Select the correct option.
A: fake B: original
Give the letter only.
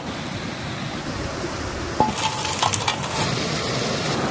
B